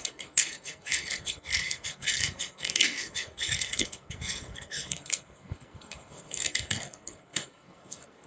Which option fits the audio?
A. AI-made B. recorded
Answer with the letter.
A